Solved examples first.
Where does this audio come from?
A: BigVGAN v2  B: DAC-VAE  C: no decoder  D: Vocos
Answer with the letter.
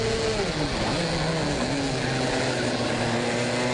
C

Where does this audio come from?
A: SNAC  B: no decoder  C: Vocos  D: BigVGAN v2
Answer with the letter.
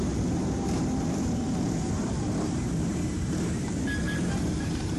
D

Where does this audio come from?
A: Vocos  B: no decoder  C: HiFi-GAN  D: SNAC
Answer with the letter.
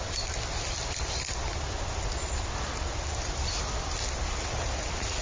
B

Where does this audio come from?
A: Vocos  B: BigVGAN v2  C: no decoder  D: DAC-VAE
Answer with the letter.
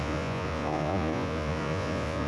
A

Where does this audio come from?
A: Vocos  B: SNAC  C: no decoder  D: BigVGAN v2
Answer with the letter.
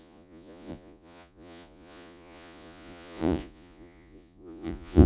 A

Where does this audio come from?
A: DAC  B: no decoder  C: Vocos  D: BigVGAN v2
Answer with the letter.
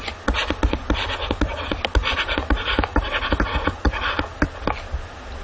B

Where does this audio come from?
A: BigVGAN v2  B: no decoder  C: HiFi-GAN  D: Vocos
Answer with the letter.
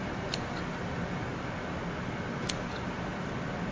B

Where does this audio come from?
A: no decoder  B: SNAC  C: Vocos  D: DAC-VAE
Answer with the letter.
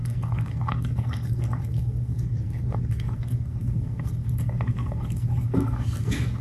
B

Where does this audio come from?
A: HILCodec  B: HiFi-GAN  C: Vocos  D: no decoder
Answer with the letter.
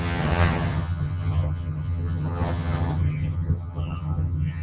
B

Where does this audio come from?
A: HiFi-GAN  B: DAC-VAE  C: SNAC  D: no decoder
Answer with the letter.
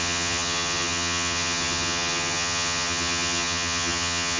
A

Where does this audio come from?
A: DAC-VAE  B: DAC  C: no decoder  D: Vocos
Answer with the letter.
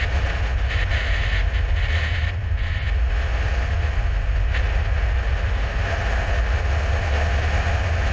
C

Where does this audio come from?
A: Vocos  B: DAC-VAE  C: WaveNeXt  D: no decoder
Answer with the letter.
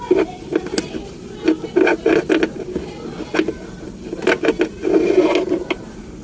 D